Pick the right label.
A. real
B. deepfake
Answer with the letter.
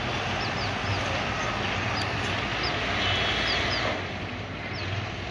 A